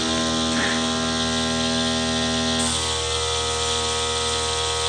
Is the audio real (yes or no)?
yes